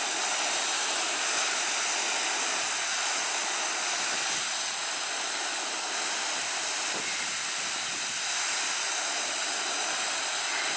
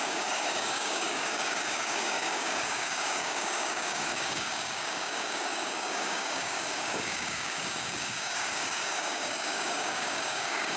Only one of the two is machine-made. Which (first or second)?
second